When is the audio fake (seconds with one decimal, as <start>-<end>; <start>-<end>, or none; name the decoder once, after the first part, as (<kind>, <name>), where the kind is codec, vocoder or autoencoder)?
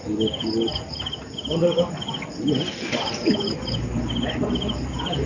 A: 0.7-2.1 (vocoder, BigVGAN v2); 4.4-5.3